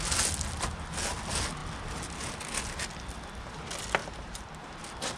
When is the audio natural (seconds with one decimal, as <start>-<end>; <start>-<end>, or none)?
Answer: 0.0-4.0; 4.7-5.2